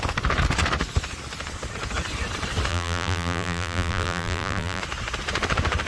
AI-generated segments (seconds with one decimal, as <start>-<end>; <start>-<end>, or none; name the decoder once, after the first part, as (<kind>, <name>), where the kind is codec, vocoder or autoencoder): 2.7-4.8 (vocoder, BigVGAN v2)